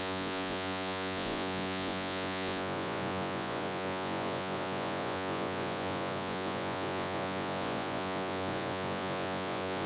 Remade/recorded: remade